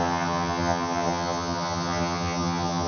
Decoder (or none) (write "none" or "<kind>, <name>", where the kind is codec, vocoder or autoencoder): vocoder, HiFi-GAN